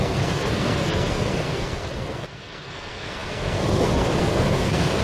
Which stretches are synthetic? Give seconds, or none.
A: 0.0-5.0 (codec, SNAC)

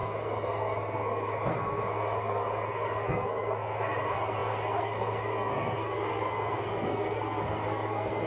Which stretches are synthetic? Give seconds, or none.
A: 0.0-8.3 (codec, SNAC)